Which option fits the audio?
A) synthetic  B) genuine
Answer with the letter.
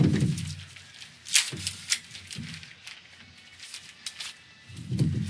B